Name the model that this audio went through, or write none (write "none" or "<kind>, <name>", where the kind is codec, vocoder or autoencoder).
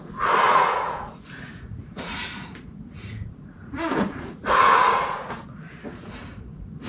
vocoder, Vocos